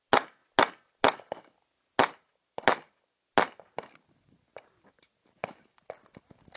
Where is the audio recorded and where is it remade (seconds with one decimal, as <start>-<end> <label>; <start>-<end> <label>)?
0.0-6.6 recorded